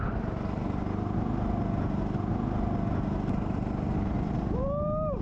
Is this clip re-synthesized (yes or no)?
no